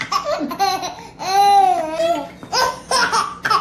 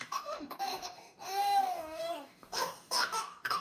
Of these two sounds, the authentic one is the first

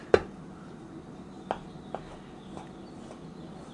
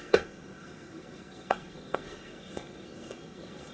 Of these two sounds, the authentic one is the first